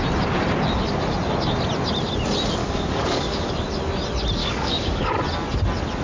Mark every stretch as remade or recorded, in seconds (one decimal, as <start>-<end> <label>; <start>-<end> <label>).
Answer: 0.0-2.6 recorded; 2.6-3.5 remade; 3.5-4.4 recorded; 4.4-5.1 remade; 5.1-6.0 recorded